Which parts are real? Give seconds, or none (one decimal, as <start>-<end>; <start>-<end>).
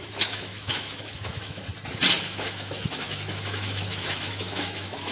1.7-2.2